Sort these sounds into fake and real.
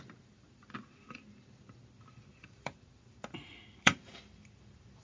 fake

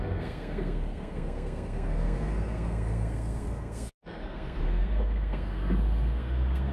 fake